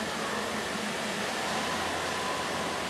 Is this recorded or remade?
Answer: recorded